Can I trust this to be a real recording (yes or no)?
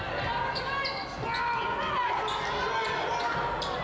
yes